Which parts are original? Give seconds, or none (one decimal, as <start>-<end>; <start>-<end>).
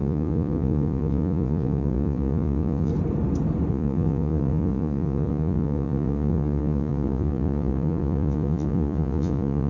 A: 2.9-3.7